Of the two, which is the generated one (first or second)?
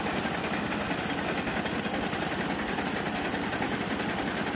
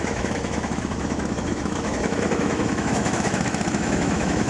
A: second